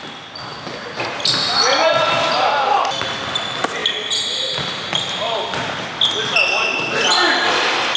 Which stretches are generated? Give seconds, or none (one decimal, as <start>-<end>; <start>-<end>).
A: none